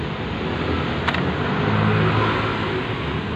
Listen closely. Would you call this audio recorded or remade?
recorded